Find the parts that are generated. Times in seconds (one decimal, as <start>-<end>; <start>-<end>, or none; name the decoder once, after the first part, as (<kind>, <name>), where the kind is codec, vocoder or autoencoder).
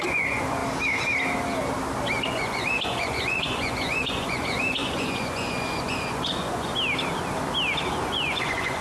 0.0-0.6 (vocoder, Vocos); 2.3-6.7; 7.9-8.8